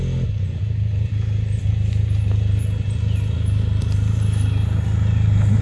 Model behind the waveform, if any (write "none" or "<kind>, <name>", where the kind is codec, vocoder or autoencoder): none